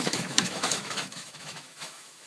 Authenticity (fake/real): fake